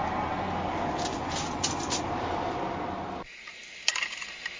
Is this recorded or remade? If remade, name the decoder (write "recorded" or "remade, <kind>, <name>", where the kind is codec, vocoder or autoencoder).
recorded